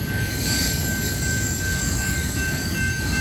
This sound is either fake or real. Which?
fake